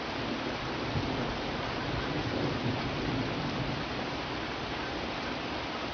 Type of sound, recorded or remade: recorded